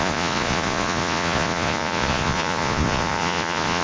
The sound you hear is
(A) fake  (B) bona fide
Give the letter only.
A